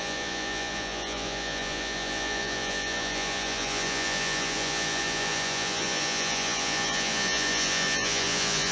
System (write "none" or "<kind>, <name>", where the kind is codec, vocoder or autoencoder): vocoder, Vocos